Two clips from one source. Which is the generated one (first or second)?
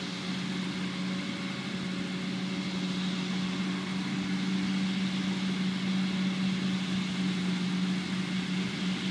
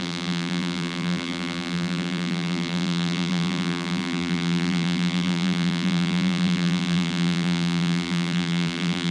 second